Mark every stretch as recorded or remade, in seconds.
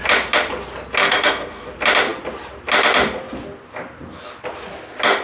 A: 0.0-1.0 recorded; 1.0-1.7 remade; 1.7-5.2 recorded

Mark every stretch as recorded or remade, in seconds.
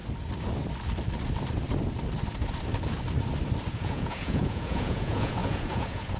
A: 0.0-3.7 recorded; 3.7-6.2 remade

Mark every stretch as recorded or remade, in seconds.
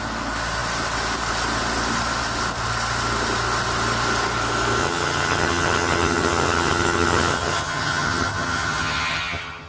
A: 0.0-4.8 recorded; 4.8-9.7 remade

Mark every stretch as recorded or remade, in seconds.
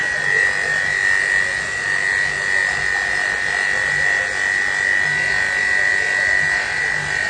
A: 0.0-7.3 recorded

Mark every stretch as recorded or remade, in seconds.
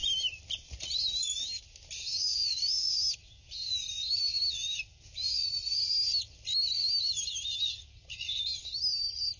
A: 0.0-9.4 recorded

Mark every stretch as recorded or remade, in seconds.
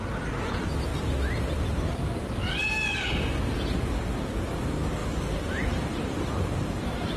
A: 0.0-5.0 recorded; 5.0-6.3 remade; 6.3-7.2 recorded